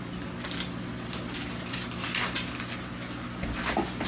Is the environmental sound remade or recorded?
recorded